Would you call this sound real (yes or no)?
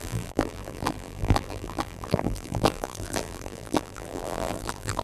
no